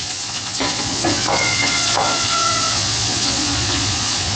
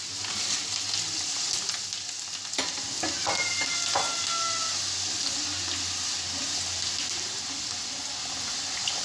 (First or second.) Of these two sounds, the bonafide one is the second